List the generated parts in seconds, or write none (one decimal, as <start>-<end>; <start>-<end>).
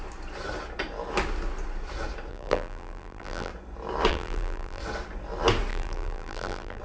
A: 2.3-3.5; 4.1-4.8; 5.7-6.8